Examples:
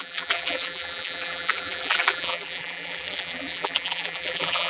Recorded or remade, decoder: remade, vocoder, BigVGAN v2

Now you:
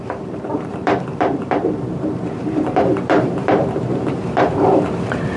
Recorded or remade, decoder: remade, vocoder, BigVGAN v2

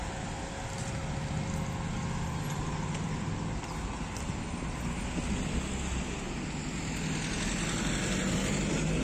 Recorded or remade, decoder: recorded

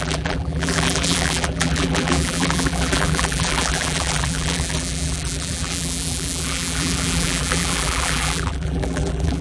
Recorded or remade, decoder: remade, vocoder, BigVGAN v2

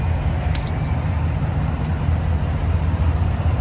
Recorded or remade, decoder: recorded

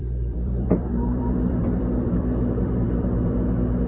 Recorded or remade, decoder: remade, vocoder, BigVGAN v2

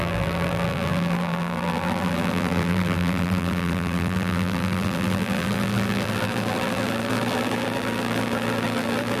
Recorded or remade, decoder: remade, vocoder, BigVGAN v2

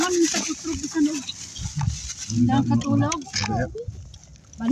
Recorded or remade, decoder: recorded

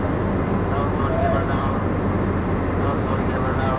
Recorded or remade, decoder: remade, vocoder, BigVGAN v2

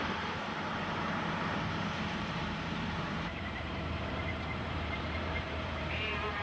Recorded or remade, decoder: remade, vocoder, BigVGAN v2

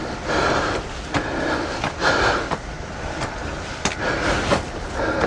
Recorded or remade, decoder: remade, vocoder, BigVGAN v2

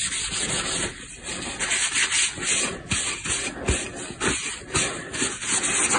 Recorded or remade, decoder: recorded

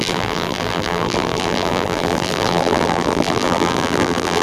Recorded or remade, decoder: remade, vocoder, BigVGAN v2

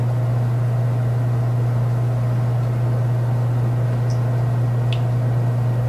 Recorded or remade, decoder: recorded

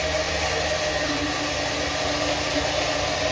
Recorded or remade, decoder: recorded